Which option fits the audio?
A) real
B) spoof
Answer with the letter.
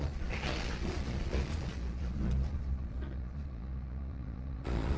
B